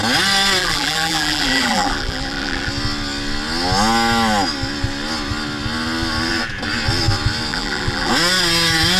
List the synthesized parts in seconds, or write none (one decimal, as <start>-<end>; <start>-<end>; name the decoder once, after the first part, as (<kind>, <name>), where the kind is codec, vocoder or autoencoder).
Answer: 0.6-2.7 (vocoder, BigVGAN v2); 7.5-8.1